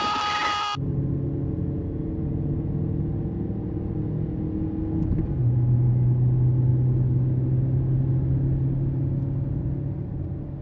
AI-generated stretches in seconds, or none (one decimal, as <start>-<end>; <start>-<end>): none

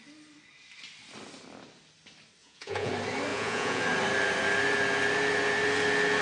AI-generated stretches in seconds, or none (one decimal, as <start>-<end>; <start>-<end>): 2.4-2.9; 3.3-3.8

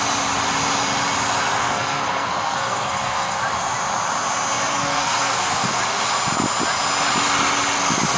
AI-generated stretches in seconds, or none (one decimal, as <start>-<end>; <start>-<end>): 1.6-3.4; 4.7-5.8